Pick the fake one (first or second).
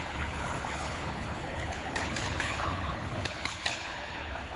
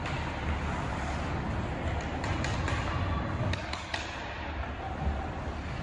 first